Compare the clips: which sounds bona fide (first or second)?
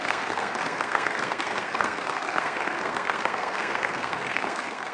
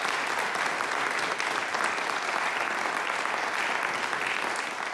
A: second